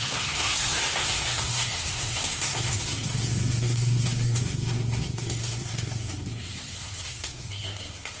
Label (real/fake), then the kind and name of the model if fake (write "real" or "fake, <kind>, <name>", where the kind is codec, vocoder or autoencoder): fake, codec, SNAC